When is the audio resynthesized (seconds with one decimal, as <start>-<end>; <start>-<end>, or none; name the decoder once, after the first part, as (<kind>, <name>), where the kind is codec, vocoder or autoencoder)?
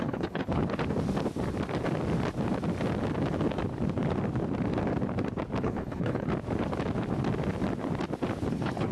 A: 0.0-0.6 (codec, HILCodec); 5.6-6.3; 8.5-8.9